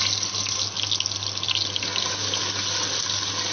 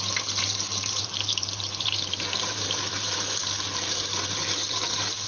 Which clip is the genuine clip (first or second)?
first